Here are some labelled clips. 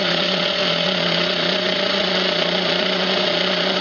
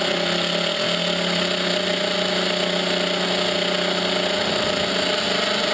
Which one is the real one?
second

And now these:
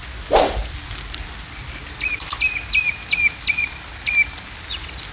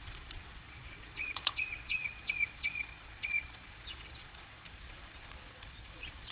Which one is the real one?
first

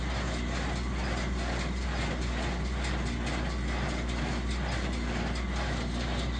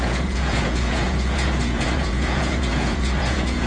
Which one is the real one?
first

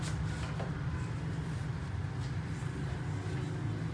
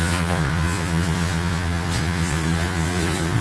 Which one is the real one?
first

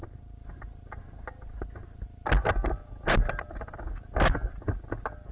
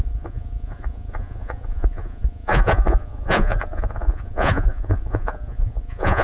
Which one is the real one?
first